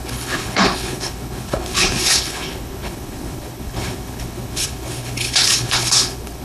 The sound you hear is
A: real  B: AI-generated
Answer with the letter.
B